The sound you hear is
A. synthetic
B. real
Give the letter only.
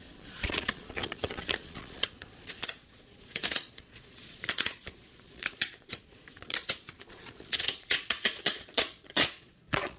A